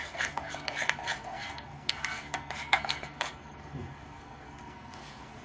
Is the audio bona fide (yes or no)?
no